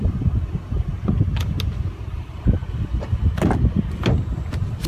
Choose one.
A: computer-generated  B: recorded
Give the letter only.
B